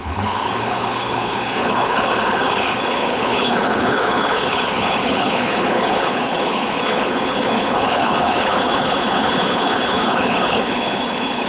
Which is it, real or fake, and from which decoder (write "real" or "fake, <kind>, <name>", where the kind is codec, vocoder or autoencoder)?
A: fake, codec, HILCodec